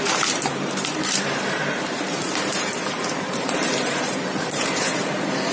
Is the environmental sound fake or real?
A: fake